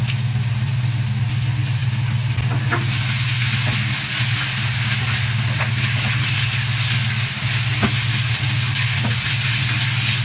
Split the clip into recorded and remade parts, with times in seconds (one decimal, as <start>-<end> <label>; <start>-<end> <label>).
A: 0.0-10.2 recorded